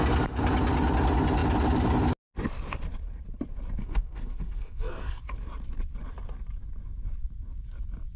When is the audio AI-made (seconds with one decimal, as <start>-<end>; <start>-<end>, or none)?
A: 3.8-5.2